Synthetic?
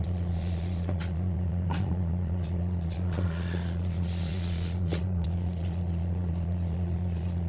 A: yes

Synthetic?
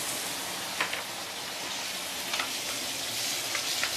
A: no